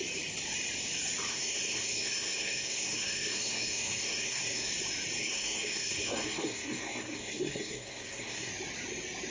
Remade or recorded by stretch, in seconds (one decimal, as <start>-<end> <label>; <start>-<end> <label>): 0.0-1.3 recorded; 1.3-4.7 remade; 4.7-5.2 recorded; 5.2-8.5 remade; 8.5-9.3 recorded

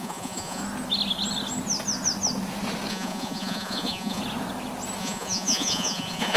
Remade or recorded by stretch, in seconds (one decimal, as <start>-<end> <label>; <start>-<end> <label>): 0.0-0.6 remade; 0.6-2.9 recorded; 2.9-4.2 remade; 4.2-5.0 recorded; 5.0-6.4 remade

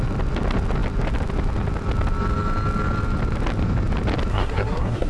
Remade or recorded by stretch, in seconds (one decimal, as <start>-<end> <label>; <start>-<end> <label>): 0.0-4.3 recorded; 4.3-5.1 remade

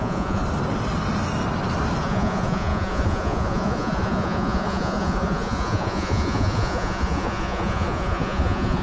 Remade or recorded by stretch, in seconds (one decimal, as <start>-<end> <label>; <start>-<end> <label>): 0.0-0.4 remade; 0.4-2.0 recorded; 2.0-8.8 remade